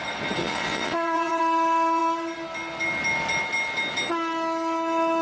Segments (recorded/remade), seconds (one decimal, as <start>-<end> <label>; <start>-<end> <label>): 0.0-0.4 recorded; 0.4-1.4 remade; 1.4-5.2 recorded